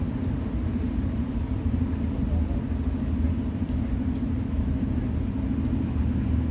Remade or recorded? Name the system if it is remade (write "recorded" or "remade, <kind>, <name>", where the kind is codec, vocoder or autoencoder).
recorded